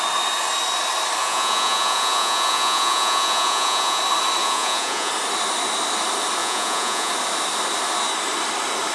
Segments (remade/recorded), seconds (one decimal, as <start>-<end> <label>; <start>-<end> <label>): 0.0-1.2 recorded; 1.2-4.0 remade; 4.0-4.4 recorded; 4.4-5.1 remade; 5.1-6.4 recorded; 6.4-7.1 remade; 7.1-8.9 recorded